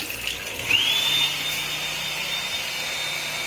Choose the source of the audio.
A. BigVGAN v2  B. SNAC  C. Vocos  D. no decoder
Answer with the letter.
D